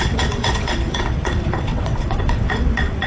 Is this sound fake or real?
fake